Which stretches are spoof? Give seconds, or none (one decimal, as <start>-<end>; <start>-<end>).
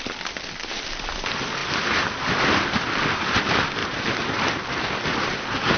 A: none